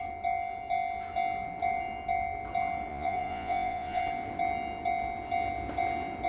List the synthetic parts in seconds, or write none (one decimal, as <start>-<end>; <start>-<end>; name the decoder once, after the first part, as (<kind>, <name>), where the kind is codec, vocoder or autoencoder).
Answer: 2.9-4.0 (vocoder, Vocos)